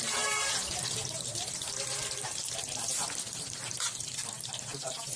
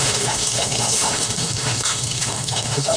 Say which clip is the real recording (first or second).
first